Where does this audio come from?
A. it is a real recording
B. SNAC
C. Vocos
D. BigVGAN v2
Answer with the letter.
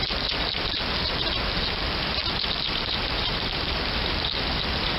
A